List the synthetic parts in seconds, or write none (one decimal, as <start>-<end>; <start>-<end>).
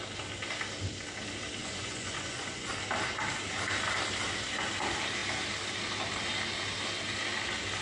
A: 1.6-2.7